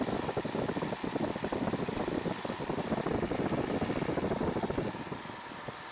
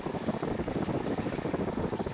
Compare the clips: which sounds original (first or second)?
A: first